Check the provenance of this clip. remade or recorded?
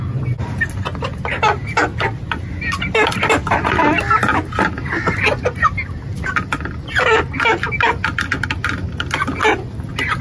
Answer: recorded